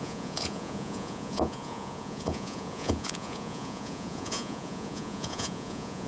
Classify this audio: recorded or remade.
remade